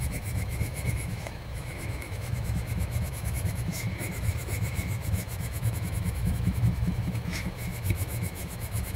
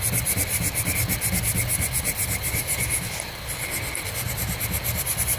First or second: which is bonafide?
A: second